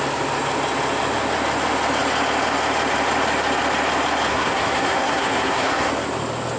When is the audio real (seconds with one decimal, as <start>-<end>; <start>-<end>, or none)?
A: 0.0-4.3; 5.9-6.6